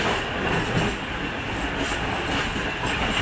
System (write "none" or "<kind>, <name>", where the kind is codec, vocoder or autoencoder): none